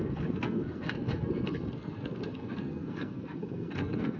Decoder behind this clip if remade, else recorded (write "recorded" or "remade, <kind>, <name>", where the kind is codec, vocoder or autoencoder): remade, codec, SNAC